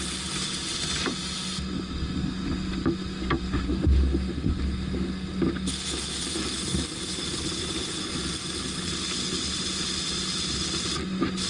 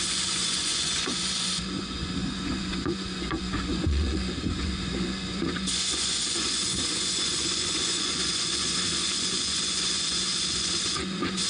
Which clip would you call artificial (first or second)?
second